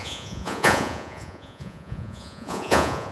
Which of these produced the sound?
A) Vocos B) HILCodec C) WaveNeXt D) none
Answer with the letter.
A